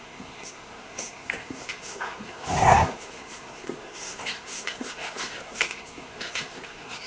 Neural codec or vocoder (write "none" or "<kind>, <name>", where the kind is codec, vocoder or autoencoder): codec, SNAC